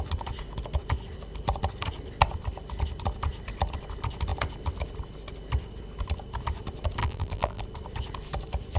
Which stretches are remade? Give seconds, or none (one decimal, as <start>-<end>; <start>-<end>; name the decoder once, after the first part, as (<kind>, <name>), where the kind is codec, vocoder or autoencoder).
7.0-7.6 (vocoder, BigVGAN v2)